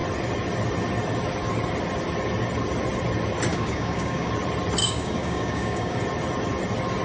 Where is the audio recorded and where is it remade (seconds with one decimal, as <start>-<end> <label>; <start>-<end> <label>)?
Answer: 0.0-3.5 recorded; 3.5-4.3 remade; 4.3-4.8 recorded; 4.8-6.0 remade; 6.0-7.0 recorded